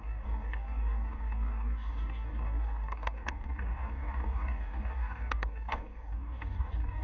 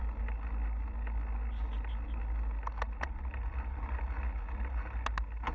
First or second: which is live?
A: second